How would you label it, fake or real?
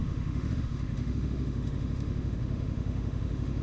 fake